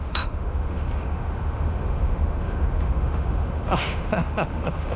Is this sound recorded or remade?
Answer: remade